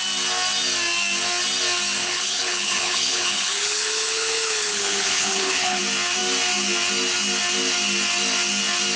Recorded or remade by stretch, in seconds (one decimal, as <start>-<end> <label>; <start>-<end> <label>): 0.0-2.0 recorded; 2.0-5.8 remade; 5.8-9.0 recorded